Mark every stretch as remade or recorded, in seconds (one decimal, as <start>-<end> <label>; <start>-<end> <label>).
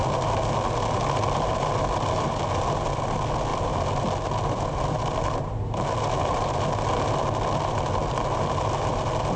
0.0-9.4 recorded